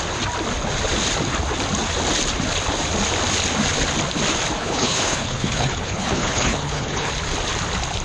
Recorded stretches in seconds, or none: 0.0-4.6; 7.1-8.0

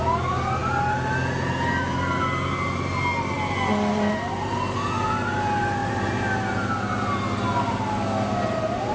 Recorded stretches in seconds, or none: 0.0-8.9

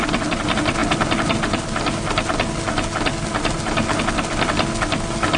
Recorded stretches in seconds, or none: 0.0-5.4

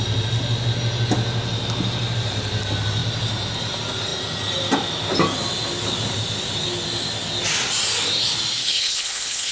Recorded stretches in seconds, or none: 0.0-8.6

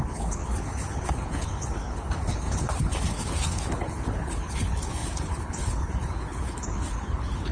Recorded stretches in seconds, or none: none

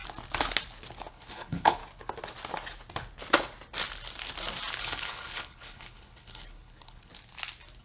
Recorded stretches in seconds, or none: 0.0-1.1; 1.8-4.8; 7.1-7.8

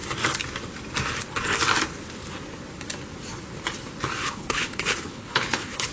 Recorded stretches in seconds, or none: 0.0-4.2

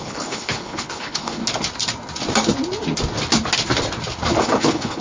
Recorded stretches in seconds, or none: 1.4-4.4